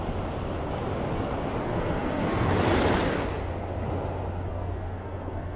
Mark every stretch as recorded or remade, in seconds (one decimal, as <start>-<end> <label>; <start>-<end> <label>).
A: 0.0-1.6 recorded; 1.6-2.5 remade; 2.5-4.5 recorded; 4.5-5.6 remade